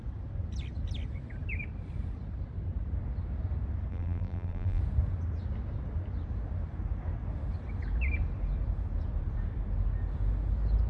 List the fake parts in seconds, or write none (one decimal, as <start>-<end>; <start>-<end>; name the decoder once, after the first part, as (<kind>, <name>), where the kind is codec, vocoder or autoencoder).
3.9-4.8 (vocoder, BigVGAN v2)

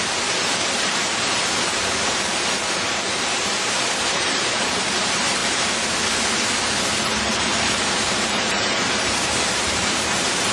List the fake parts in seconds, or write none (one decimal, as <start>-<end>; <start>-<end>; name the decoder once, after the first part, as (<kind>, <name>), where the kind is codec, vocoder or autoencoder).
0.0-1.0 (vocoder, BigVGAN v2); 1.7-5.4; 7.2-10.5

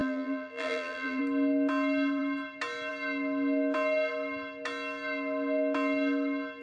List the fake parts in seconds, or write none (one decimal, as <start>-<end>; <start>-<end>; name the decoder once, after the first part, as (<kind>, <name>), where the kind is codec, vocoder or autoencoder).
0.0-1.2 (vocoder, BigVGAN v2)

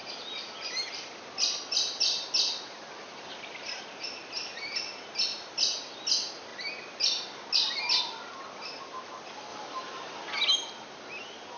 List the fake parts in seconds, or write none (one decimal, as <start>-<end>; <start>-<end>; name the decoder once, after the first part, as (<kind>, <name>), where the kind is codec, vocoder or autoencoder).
0.0-3.8 (vocoder, BigVGAN v2); 9.5-10.5

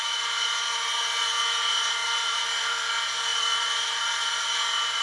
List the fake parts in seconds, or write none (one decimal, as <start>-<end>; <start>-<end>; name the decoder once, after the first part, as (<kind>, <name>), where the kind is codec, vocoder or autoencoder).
2.0-2.6 (vocoder, BigVGAN v2); 3.3-4.4

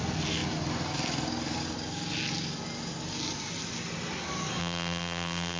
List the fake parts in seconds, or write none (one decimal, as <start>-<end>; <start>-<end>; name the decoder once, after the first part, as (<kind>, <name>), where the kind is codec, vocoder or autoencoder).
4.6-5.6 (vocoder, BigVGAN v2)

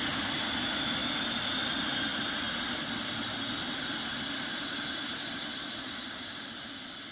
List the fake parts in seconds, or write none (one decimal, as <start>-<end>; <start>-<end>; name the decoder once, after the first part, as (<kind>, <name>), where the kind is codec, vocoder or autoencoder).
none

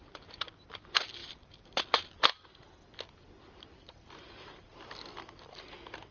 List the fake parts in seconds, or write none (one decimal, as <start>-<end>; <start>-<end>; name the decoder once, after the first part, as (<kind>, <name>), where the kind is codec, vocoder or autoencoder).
1.2-1.8 (vocoder, BigVGAN v2); 3.7-4.5